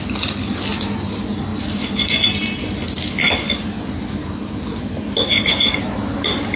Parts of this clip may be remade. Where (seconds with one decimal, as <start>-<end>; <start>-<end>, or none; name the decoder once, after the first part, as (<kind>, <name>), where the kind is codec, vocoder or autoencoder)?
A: none